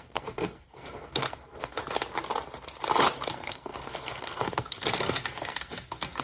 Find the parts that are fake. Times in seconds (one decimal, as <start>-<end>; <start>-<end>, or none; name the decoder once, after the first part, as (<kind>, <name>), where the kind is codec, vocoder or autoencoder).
0.0-1.8 (codec, SNAC); 3.3-6.2